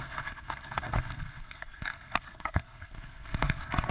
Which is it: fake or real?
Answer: fake